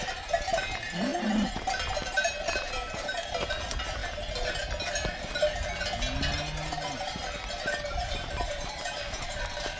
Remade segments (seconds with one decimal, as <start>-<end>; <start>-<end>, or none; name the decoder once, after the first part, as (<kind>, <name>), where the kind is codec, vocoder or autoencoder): 0.0-4.0 (vocoder, BigVGAN v2); 6.6-7.2; 7.8-9.8

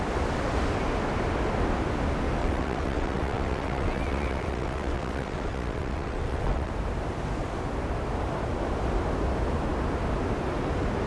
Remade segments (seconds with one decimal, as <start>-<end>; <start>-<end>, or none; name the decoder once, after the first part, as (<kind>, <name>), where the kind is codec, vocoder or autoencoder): 2.4-6.7 (vocoder, WaveNeXt)

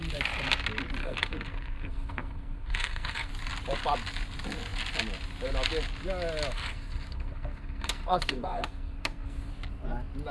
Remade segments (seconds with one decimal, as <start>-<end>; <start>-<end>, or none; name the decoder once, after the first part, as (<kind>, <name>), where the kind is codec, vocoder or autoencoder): 1.0-3.3 (codec, SNAC); 6.5-9.5

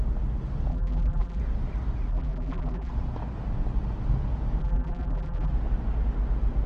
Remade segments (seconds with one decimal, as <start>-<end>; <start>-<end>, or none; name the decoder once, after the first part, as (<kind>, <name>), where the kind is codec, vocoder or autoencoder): 0.7-1.4 (vocoder, BigVGAN v2); 2.1-2.9; 4.6-5.5